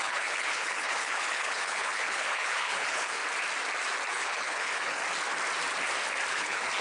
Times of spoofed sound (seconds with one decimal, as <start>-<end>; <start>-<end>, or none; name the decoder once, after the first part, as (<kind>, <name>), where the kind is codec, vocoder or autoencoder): 0.0-3.2 (codec, HILCodec); 4.1-5.0; 6.3-6.8